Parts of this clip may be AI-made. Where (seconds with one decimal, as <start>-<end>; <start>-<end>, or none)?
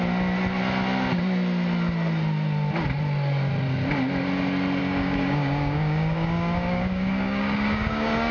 4.8-8.3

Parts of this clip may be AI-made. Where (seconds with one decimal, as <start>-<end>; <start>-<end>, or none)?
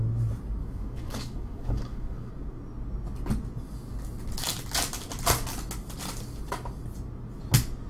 0.6-2.3